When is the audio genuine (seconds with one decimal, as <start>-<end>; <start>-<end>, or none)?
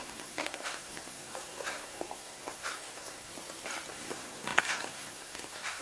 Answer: 3.3-3.9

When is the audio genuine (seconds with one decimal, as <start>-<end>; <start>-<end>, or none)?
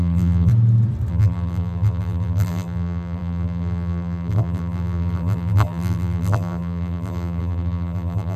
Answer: 0.5-1.1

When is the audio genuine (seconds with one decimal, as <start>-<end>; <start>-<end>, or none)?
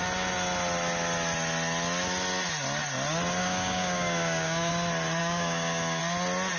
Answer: 0.0-3.4; 4.7-5.2; 6.0-6.6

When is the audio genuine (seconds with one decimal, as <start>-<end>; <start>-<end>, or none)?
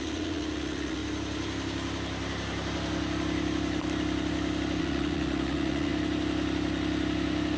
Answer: 1.0-4.8; 5.9-7.6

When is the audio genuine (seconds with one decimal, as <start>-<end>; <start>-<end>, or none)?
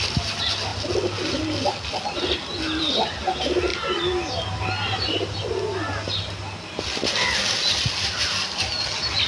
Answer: 0.0-9.3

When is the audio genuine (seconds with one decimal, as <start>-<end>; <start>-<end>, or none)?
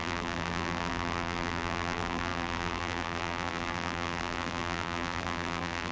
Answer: none